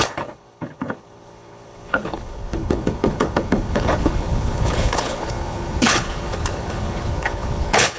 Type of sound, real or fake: fake